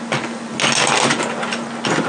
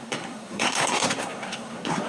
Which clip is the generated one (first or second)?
second